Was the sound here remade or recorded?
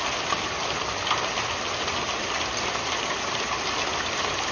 recorded